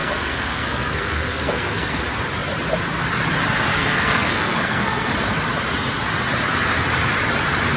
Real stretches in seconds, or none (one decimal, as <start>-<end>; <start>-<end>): 2.0-3.7; 5.1-7.8